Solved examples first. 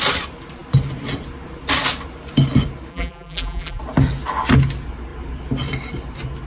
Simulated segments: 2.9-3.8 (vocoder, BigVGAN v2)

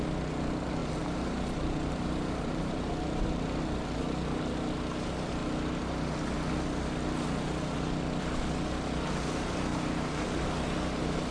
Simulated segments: 0.8-4.0 (vocoder, BigVGAN v2); 9.7-10.5

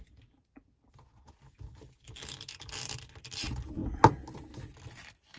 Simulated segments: 0.0-1.7 (vocoder, BigVGAN v2); 2.8-3.8; 5.0-5.4

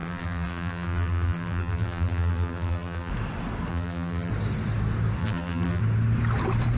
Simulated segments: 0.0-3.1 (vocoder, BigVGAN v2); 3.7-4.3; 5.2-5.8

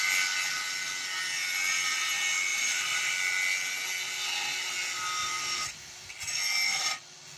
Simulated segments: 2.5-3.1 (vocoder, BigVGAN v2); 5.2-6.1

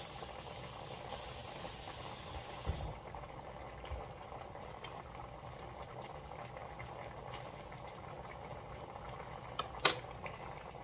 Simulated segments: none

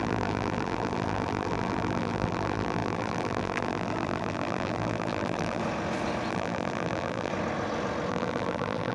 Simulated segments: 0.0-5.6 (vocoder, BigVGAN v2); 6.3-7.3; 8.1-8.9

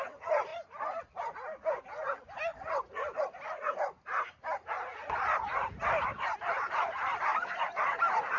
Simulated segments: 5.5-8.4 (vocoder, BigVGAN v2)